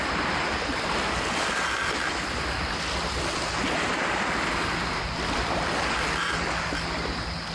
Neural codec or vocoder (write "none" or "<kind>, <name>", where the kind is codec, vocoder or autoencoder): none